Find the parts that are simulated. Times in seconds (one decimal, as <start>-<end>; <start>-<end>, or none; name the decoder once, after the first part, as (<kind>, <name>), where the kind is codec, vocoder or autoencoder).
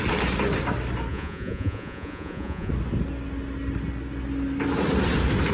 1.1-2.7 (vocoder, Vocos)